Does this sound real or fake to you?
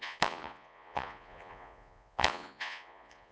fake